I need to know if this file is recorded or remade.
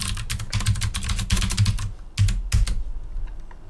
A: recorded